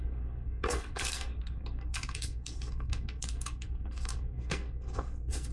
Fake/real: fake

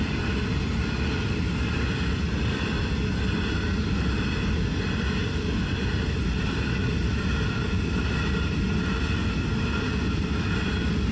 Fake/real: real